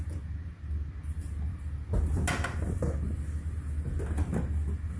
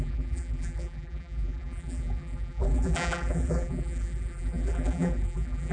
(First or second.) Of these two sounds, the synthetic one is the second